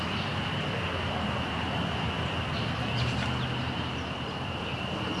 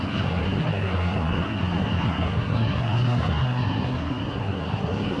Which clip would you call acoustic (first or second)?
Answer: first